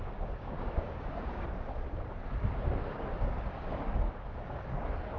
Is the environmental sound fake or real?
fake